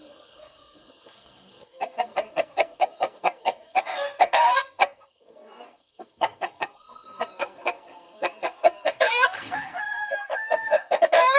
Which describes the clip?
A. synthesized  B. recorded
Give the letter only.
A